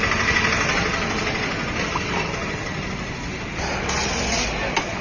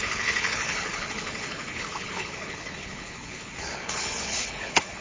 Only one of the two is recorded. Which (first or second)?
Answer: first